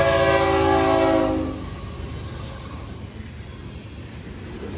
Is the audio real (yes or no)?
yes